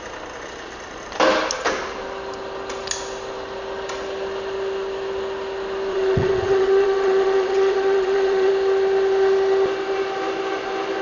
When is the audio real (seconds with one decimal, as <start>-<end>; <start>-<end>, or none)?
0.0-5.9; 8.5-11.0